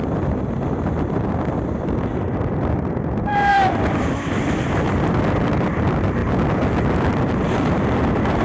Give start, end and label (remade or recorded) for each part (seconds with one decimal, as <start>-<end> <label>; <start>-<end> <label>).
0.0-6.2 remade; 6.2-6.8 recorded; 6.8-8.4 remade